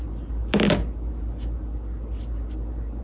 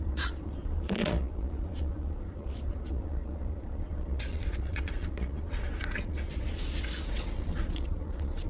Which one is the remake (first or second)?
second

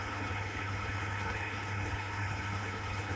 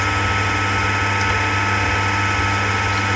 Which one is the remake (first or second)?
first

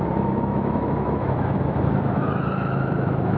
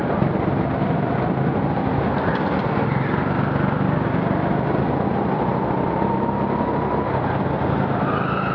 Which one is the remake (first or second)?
first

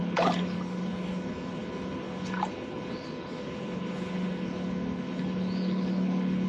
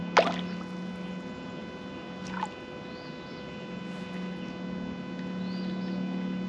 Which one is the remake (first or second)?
first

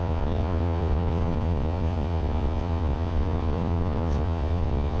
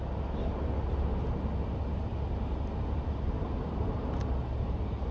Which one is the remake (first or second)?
first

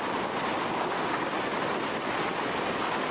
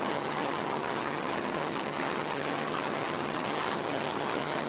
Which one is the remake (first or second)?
second